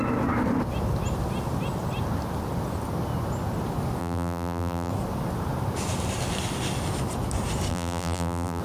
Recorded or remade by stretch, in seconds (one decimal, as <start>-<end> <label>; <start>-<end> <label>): 0.0-4.0 recorded; 4.0-4.9 remade; 4.9-7.7 recorded; 7.7-8.6 remade